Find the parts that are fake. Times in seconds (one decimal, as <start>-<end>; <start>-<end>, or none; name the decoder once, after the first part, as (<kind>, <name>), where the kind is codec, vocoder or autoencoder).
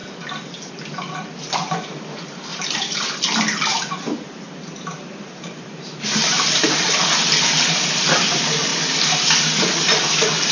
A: 2.5-3.2 (vocoder, BigVGAN v2); 3.7-6.6